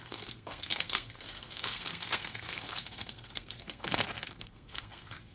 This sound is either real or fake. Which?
fake